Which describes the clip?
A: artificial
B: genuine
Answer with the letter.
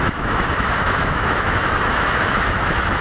A